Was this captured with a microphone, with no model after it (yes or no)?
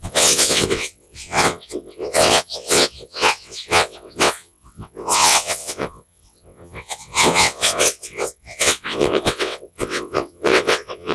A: no